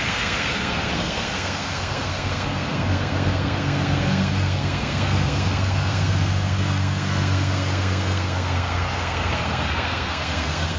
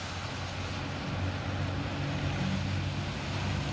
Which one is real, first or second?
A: second